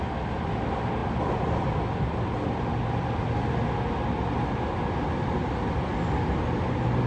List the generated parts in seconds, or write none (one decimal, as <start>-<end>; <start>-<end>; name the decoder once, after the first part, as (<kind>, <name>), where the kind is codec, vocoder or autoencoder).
none